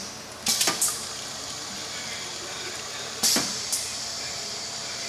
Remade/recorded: remade